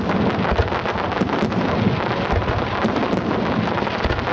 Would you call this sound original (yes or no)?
yes